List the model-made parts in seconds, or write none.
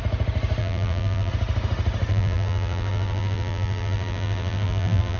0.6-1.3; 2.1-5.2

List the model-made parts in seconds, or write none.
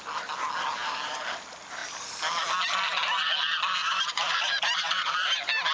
0.8-1.4; 3.8-5.7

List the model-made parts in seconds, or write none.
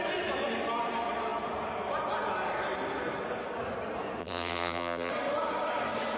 4.2-5.1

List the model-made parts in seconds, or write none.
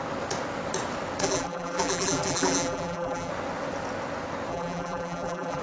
1.2-3.3; 4.5-5.6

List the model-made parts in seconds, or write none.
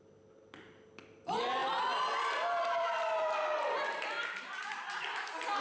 1.6-5.0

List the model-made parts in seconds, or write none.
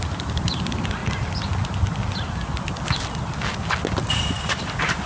0.0-1.0; 4.1-5.1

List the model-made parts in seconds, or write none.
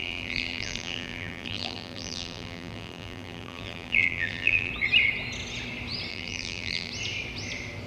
0.0-4.7; 6.1-6.9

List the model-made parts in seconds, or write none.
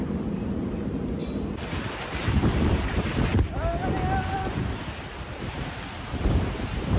0.0-1.2; 2.2-3.3; 5.5-7.0